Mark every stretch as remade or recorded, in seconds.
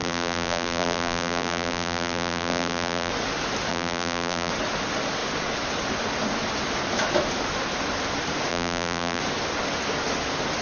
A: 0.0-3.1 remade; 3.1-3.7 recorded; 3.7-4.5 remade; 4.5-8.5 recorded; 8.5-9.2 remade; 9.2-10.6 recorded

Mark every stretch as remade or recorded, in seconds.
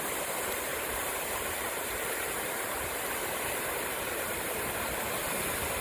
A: 0.0-0.7 recorded; 0.7-3.0 remade; 3.0-5.8 recorded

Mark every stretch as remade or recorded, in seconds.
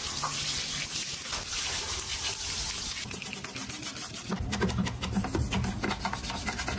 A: 0.0-6.8 recorded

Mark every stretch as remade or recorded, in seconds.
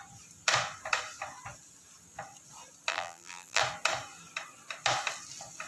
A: 0.0-2.9 recorded; 2.9-3.6 remade; 3.6-5.7 recorded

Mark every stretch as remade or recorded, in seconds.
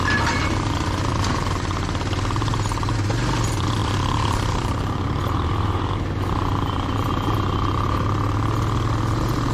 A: 0.0-3.8 recorded; 3.8-7.1 remade; 7.1-9.5 recorded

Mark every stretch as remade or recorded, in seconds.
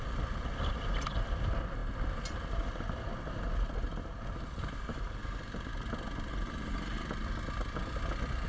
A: 0.0-8.5 recorded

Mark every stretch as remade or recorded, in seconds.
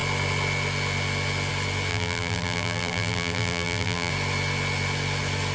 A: 0.0-1.9 recorded; 1.9-4.1 remade; 4.1-5.5 recorded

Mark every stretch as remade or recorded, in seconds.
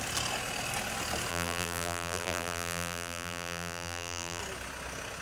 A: 0.0-1.3 recorded; 1.3-4.4 remade; 4.4-5.2 recorded